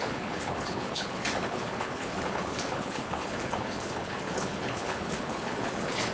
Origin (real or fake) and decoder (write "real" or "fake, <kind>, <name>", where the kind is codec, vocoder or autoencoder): fake, codec, HILCodec